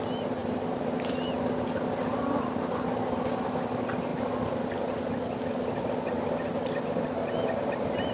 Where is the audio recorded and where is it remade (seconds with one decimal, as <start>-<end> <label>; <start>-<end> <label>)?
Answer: 0.0-0.4 recorded; 0.4-3.3 remade; 3.3-8.1 recorded